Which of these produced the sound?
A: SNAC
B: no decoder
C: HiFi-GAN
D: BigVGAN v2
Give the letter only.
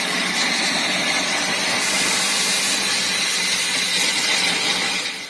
B